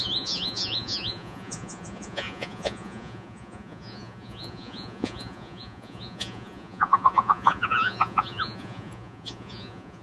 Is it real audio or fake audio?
fake